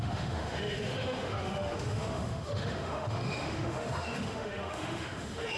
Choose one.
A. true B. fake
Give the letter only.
B